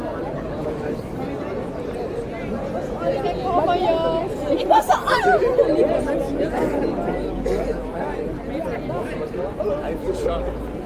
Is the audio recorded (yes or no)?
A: yes